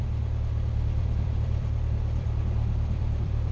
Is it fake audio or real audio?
fake